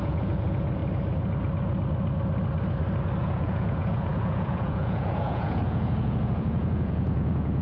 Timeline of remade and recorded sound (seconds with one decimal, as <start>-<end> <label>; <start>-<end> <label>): 0.0-0.8 remade; 0.8-3.2 recorded; 3.2-7.6 remade